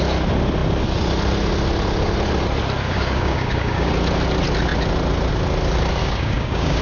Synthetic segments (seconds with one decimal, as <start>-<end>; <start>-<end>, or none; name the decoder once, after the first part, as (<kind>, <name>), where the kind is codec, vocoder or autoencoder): 2.9-3.9 (codec, DAC); 6.0-6.8